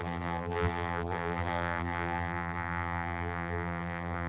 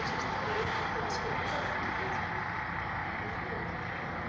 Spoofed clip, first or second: first